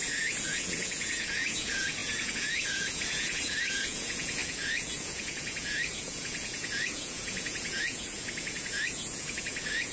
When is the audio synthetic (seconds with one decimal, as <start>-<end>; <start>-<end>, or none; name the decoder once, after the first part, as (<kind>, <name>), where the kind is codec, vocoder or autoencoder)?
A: 0.0-9.9 (vocoder, Vocos)